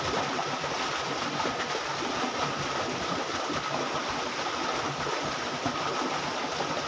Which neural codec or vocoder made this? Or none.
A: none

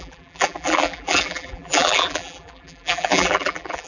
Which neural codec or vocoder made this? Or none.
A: vocoder, BigVGAN v2